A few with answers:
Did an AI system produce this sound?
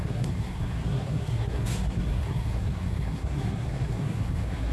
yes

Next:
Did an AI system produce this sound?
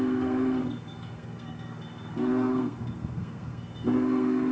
yes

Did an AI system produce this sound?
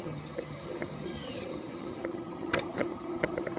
yes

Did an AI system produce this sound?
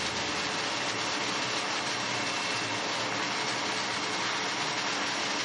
no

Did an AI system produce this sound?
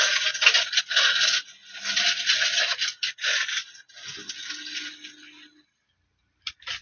no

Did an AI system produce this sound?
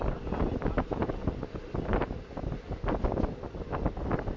no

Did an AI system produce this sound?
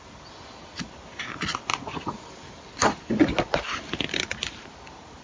no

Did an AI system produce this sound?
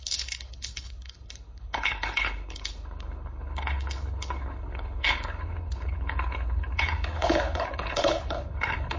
yes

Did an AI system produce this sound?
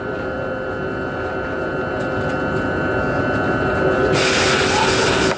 no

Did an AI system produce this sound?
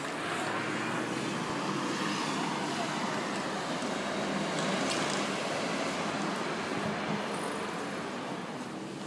no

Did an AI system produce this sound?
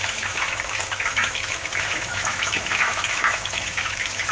yes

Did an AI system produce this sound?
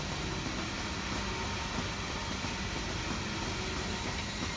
no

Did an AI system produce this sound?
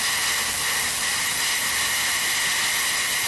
no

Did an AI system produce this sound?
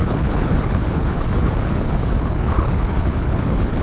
yes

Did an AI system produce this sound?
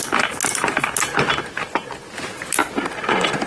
no